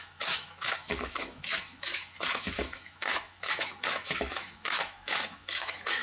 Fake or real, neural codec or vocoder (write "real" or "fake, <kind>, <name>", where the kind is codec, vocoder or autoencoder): fake, autoencoder, DAC-VAE